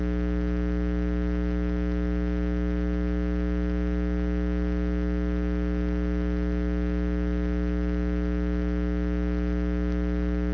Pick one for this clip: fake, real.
real